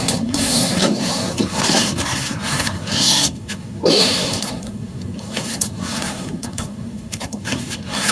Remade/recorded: remade